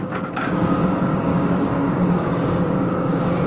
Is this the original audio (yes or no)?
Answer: no